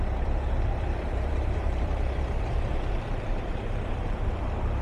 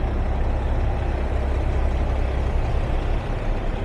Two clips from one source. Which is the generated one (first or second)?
first